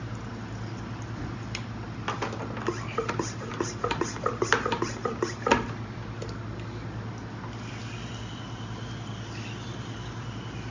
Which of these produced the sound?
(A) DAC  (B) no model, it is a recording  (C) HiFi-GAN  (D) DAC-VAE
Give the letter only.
B